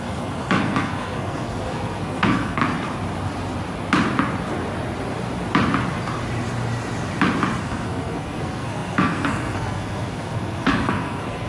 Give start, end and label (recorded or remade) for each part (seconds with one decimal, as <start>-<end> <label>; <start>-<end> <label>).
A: 0.0-2.6 remade; 2.6-7.6 recorded; 7.6-11.5 remade